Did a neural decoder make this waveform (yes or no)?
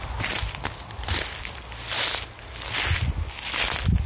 no